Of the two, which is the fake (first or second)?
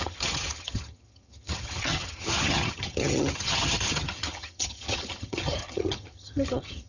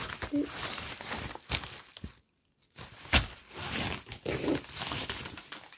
first